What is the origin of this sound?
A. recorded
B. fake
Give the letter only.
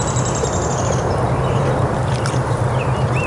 B